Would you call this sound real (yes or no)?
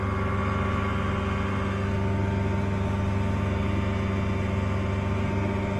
yes